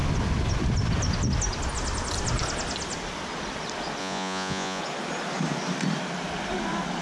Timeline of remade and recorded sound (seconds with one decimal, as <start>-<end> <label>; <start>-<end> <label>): 0.0-4.0 recorded; 4.0-4.8 remade; 4.8-7.0 recorded